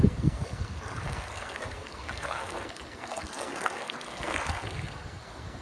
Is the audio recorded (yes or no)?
no